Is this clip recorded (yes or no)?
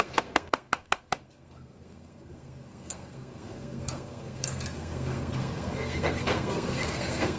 no